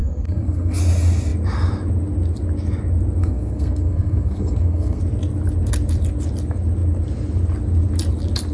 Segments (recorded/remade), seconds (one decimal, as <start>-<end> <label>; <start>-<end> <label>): 0.0-0.8 remade; 0.8-3.2 recorded; 3.2-5.0 remade; 5.0-8.5 recorded